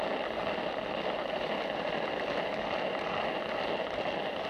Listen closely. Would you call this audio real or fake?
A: real